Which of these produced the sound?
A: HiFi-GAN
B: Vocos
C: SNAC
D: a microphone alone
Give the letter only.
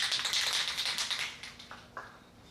D